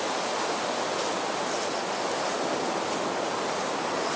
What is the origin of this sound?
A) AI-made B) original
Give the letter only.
B